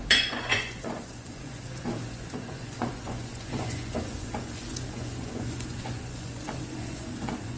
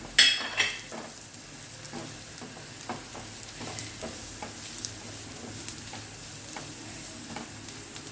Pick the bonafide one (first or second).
second